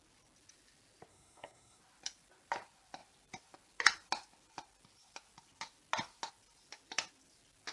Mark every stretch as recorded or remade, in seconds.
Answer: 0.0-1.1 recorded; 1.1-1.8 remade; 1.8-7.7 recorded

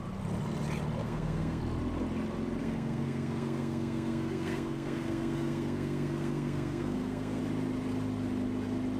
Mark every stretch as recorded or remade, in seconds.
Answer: 0.0-1.0 recorded; 1.0-1.6 remade; 1.6-2.6 recorded; 2.6-7.4 remade; 7.4-9.0 recorded